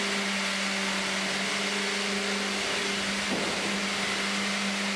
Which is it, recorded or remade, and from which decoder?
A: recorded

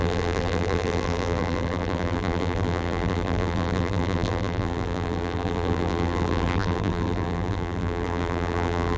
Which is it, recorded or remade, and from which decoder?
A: remade, vocoder, BigVGAN v2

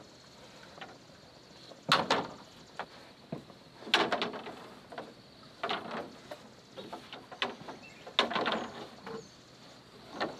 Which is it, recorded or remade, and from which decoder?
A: recorded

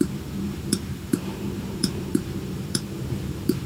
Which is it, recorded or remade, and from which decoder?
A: remade, vocoder, BigVGAN v2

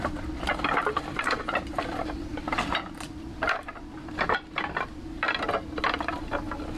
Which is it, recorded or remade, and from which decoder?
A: recorded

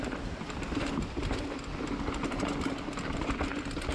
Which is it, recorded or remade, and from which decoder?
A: recorded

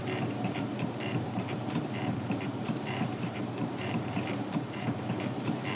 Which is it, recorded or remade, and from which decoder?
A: remade, vocoder, BigVGAN v2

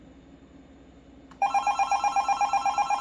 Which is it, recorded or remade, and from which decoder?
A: remade, vocoder, BigVGAN v2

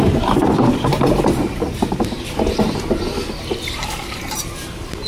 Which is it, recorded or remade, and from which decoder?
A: remade, vocoder, BigVGAN v2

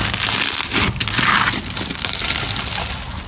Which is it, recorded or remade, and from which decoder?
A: recorded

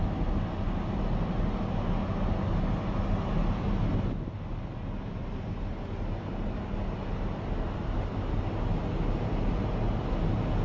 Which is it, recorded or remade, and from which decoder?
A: recorded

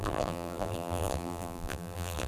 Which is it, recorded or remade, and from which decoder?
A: remade, vocoder, BigVGAN v2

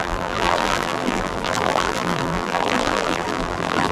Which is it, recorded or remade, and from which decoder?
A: remade, vocoder, BigVGAN v2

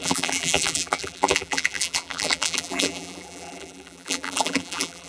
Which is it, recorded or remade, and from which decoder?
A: remade, vocoder, BigVGAN v2